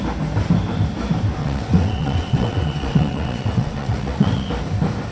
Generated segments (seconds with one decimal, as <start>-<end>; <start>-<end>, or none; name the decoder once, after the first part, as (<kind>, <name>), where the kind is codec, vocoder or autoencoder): 1.4-4.5 (vocoder, WaveNeXt)